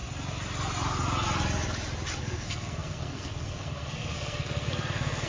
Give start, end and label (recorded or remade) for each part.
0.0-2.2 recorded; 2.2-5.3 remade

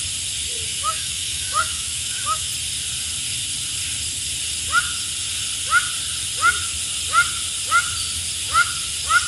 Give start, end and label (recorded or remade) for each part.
0.0-0.7 recorded; 0.7-2.5 remade; 2.5-9.3 recorded

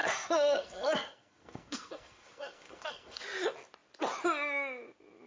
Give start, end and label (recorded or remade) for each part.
0.0-3.2 remade; 3.2-5.3 recorded

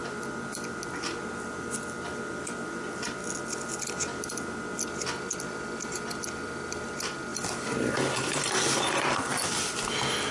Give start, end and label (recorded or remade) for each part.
0.0-2.6 recorded; 2.6-3.2 remade; 3.2-6.3 recorded; 6.3-7.3 remade; 7.3-7.9 recorded; 7.9-10.3 remade

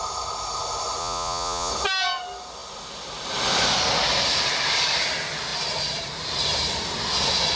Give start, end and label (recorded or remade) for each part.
0.0-1.0 recorded; 1.0-1.7 remade; 1.7-7.6 recorded

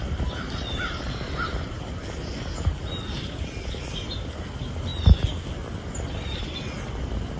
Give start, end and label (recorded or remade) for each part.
0.0-7.4 recorded